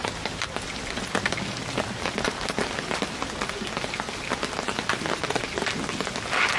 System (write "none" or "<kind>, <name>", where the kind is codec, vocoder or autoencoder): none